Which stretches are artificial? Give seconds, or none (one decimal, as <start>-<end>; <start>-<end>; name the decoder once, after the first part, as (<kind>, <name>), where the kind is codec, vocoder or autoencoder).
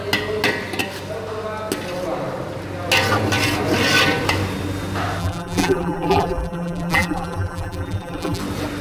5.2-8.4 (vocoder, BigVGAN v2)